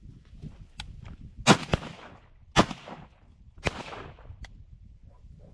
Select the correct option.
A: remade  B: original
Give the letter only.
B